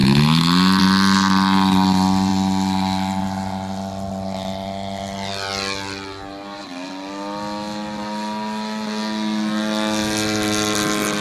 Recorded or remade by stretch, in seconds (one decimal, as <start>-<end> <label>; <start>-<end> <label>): 0.0-2.3 recorded; 2.3-3.2 remade; 3.2-11.2 recorded